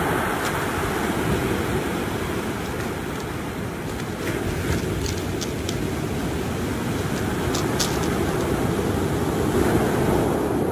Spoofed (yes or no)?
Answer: no